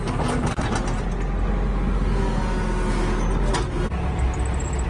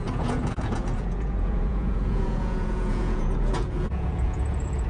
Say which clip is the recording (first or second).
first